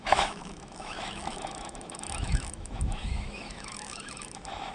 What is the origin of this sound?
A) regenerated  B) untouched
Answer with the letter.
A